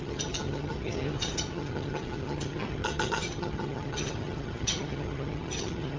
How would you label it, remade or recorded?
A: remade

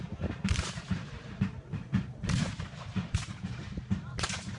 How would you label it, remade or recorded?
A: remade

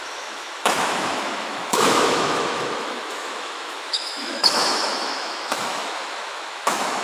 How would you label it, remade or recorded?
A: remade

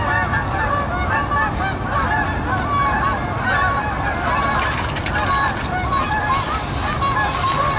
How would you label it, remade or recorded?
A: recorded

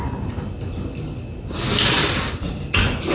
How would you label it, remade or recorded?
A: recorded